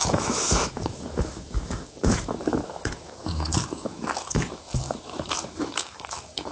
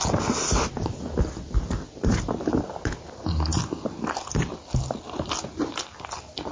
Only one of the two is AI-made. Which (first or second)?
first